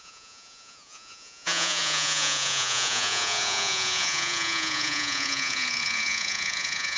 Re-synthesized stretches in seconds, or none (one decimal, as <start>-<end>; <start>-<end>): 0.0-7.0